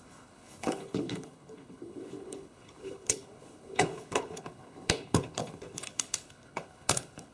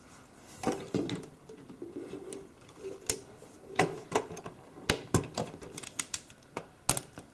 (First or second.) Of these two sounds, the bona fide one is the second